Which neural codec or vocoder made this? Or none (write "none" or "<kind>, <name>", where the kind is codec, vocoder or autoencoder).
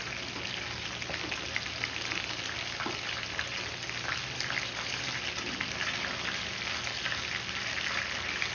none